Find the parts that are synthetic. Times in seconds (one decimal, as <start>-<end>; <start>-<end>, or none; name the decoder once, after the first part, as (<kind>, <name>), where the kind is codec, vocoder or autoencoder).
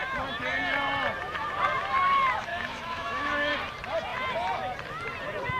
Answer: 2.5-3.5 (autoencoder, DAC-VAE)